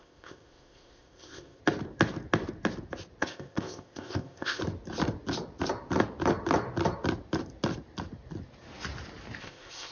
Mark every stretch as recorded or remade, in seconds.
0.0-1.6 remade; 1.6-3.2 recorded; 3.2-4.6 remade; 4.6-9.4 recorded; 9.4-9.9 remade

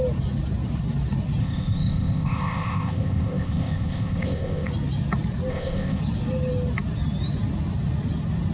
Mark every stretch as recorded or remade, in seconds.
0.0-1.4 recorded; 1.4-4.7 remade; 4.7-5.5 recorded; 5.5-6.0 remade; 6.0-8.5 recorded

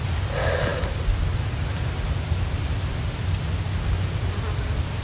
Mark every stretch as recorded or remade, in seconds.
0.0-5.0 recorded

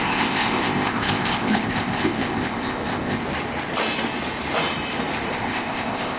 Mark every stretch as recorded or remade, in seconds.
0.0-3.2 remade; 3.2-5.3 recorded; 5.3-6.2 remade

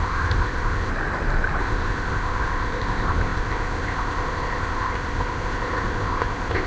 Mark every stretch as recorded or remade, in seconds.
0.0-0.9 remade; 0.9-1.6 recorded; 1.6-6.7 remade